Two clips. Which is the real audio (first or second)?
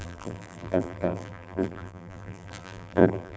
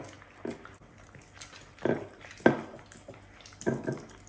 second